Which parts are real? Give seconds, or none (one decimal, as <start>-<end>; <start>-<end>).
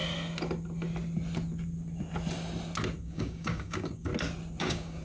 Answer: 0.0-3.0; 4.1-4.6